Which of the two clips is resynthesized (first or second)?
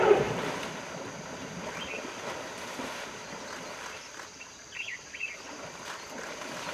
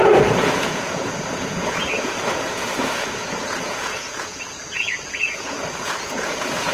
second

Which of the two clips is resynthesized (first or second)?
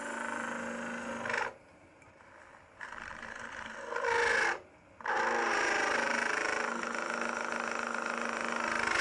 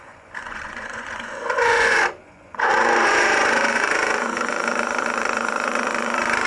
second